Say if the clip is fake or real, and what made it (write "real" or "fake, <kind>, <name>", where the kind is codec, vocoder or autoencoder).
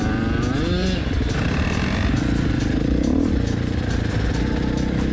real